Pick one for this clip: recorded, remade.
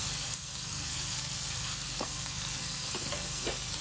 remade